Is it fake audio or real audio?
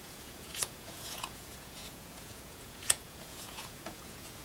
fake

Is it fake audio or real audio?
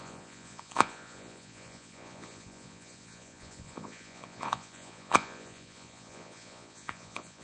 fake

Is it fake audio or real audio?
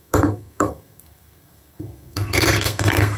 fake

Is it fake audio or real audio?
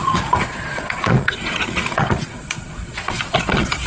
fake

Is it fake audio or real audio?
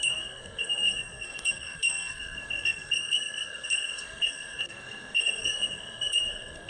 fake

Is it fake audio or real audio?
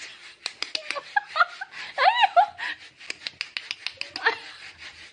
real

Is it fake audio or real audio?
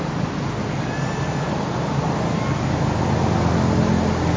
real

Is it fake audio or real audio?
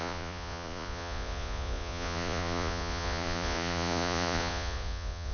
fake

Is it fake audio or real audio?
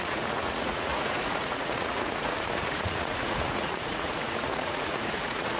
fake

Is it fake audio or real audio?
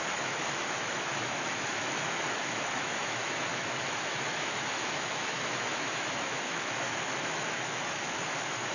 fake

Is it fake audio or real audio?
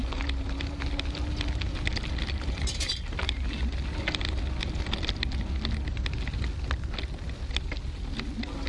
real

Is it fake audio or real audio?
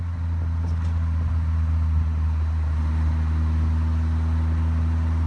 real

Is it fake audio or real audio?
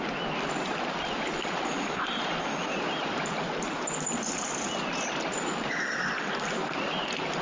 real